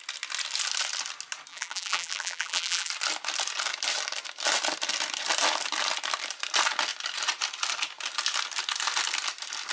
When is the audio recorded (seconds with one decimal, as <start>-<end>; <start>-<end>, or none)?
0.0-1.5; 2.9-9.7